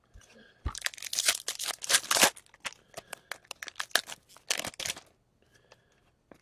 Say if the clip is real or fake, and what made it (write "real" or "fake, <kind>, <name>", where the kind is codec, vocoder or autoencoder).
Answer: real